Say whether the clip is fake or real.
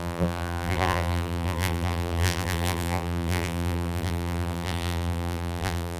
fake